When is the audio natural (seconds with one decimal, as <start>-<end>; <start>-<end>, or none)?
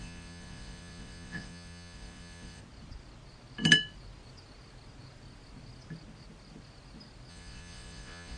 2.6-7.3